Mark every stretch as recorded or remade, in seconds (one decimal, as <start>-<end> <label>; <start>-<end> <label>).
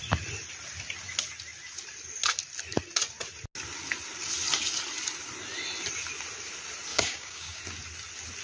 0.0-6.9 recorded; 6.9-7.6 remade; 7.6-8.4 recorded